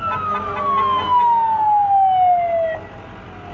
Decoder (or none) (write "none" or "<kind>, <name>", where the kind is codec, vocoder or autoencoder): none